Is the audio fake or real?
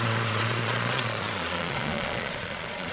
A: fake